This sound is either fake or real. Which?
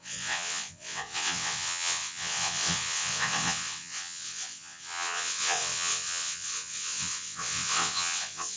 fake